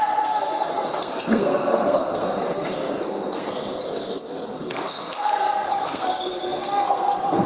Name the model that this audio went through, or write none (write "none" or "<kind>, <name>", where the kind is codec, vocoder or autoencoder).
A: codec, SNAC